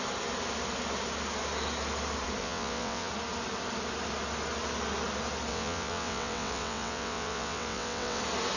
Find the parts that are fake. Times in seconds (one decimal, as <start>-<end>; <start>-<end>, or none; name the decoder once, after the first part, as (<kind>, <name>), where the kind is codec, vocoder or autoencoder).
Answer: 2.4-3.1 (vocoder, WaveNeXt); 5.5-8.2